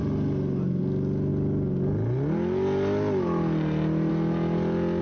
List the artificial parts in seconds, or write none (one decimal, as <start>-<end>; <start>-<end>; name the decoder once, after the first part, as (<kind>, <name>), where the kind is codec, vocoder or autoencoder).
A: none